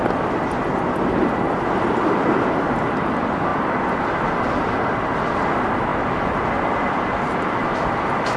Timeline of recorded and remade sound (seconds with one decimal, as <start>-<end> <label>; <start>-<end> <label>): 0.0-8.4 recorded